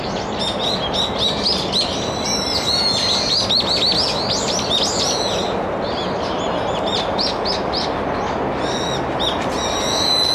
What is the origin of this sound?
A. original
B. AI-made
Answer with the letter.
A